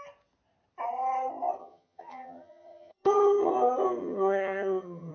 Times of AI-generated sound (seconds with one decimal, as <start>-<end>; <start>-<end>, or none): 1.6-3.5; 4.0-5.1